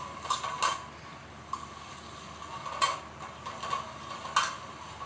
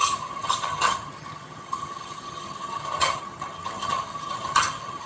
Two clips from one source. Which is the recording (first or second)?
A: first